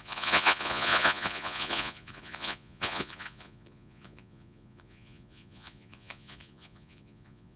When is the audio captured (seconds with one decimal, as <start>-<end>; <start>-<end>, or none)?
none